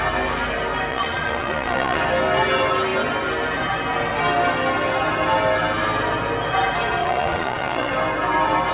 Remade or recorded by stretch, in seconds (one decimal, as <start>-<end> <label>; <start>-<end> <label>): 0.0-0.9 recorded; 0.9-2.0 remade; 2.0-7.0 recorded; 7.0-7.9 remade; 7.9-8.7 recorded